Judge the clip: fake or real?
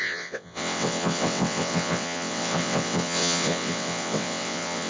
fake